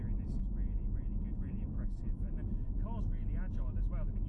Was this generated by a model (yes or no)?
no